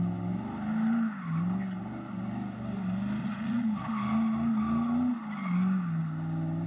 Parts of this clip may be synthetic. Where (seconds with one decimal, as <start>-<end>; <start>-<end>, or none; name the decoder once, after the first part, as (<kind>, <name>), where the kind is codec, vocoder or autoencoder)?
3.2-3.9 (vocoder, Vocos)